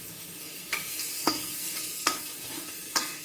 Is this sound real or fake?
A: fake